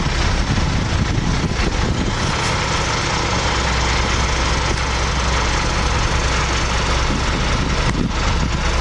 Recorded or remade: recorded